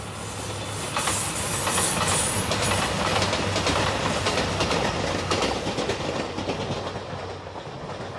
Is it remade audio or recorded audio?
recorded